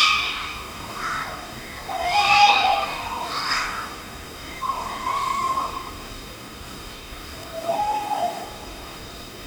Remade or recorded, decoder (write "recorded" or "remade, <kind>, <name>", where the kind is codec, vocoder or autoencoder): remade, codec, DAC